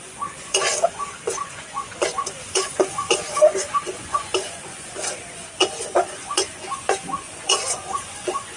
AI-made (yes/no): yes